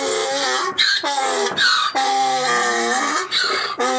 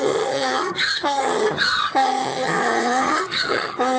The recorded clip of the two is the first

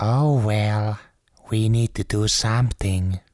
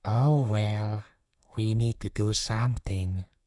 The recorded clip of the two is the first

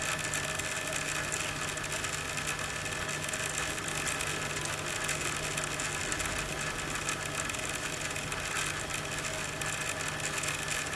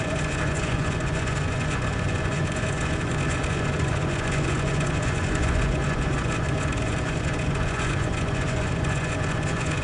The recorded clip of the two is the first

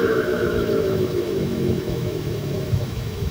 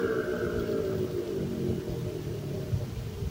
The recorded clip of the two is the second